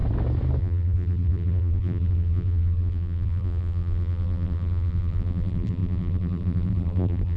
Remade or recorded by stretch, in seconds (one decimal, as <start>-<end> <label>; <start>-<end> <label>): 0.0-0.6 recorded; 0.6-7.4 remade